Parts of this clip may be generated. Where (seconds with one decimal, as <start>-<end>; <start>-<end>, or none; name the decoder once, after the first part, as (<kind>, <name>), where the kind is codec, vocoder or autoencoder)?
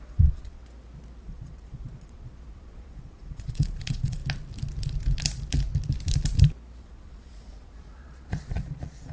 0.0-0.6 (vocoder, Vocos); 1.2-4.2; 6.8-9.1